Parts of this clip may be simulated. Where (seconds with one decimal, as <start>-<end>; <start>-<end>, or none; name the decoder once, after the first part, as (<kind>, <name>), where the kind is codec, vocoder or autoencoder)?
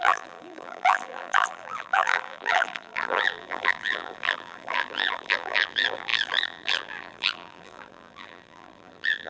0.0-9.3 (vocoder, BigVGAN v2)